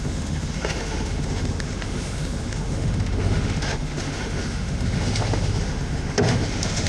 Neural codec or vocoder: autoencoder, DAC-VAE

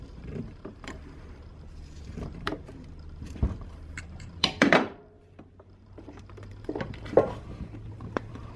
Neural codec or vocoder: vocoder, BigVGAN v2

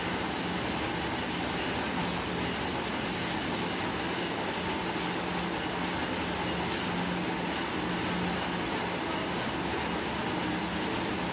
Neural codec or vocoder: none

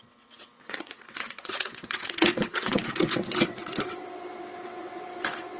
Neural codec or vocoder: vocoder, WaveNeXt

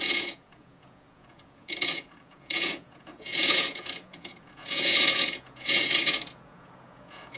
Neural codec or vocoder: vocoder, Vocos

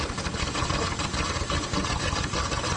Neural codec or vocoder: none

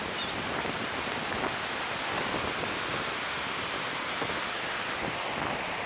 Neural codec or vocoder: none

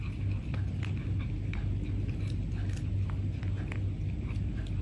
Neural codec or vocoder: none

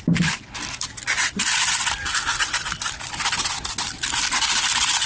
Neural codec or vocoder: none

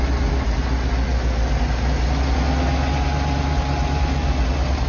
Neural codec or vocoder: none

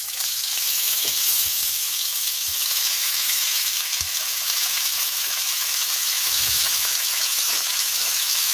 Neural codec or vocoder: autoencoder, DAC-VAE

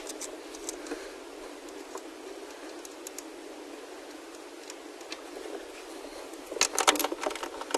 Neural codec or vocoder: none